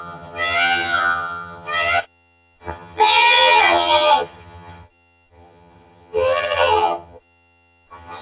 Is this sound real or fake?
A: fake